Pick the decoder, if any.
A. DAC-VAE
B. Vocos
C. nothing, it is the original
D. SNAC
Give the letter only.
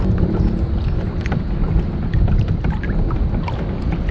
C